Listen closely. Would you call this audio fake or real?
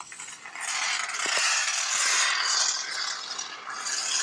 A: real